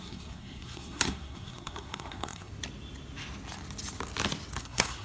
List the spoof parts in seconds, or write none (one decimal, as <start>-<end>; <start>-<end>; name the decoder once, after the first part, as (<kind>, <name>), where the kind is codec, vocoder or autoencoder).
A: 0.0-2.5 (codec, SNAC); 4.6-5.0